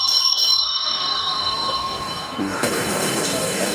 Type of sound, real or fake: fake